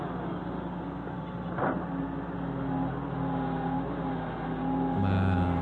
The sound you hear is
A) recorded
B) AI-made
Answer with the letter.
A